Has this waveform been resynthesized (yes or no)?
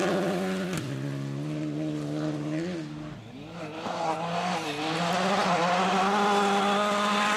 no